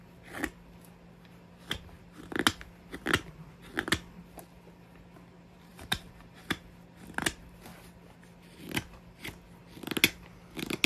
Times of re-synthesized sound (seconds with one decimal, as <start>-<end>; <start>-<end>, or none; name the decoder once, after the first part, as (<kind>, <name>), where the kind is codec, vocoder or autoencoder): 5.7-6.5 (vocoder, BigVGAN v2)